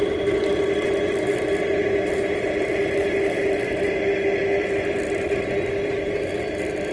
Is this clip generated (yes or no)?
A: no